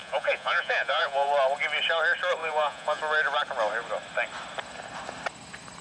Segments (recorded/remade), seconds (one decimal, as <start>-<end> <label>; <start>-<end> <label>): 0.0-1.3 remade; 1.3-2.4 recorded; 2.4-3.0 remade; 3.0-5.8 recorded